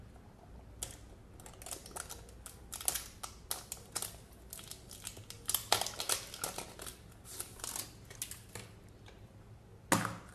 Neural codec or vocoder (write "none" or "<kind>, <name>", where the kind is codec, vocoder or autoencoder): none